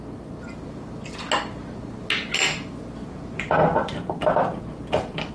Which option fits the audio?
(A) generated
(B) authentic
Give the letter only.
B